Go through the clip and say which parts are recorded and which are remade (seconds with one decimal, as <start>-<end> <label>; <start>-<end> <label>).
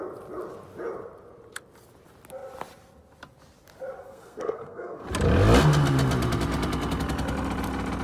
0.0-4.0 recorded; 4.0-5.0 remade; 5.0-8.0 recorded